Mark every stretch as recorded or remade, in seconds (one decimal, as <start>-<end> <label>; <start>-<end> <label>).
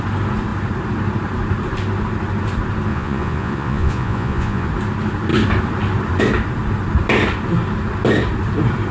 0.0-2.9 recorded; 2.9-4.7 remade; 4.7-8.9 recorded